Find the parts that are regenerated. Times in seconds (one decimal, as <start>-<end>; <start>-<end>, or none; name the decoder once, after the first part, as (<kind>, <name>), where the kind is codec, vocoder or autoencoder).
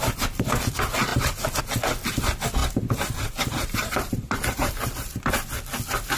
1.1-1.6 (vocoder, BigVGAN v2); 2.6-5.3